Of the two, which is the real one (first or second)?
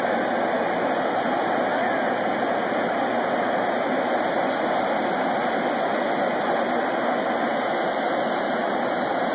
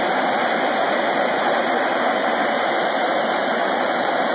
first